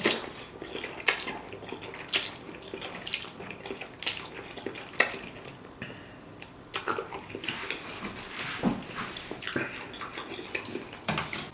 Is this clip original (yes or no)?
yes